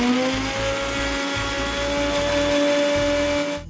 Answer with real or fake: real